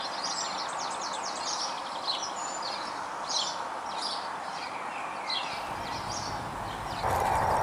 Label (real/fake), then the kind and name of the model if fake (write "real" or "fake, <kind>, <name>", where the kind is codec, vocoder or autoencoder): real